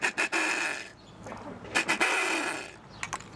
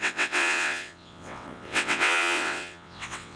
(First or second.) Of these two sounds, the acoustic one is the first